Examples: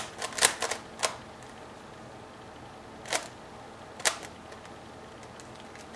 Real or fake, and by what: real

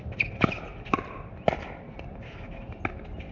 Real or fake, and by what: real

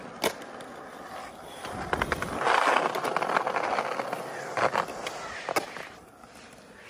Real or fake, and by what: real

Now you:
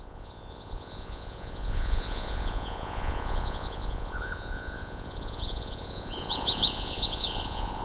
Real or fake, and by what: fake, vocoder, Vocos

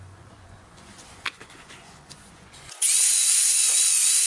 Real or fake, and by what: fake, vocoder, Vocos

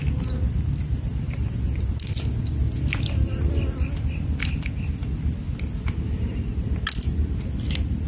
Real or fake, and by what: real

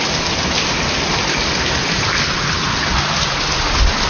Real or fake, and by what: real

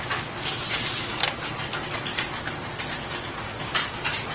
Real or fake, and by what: real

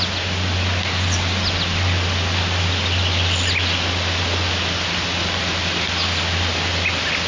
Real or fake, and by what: real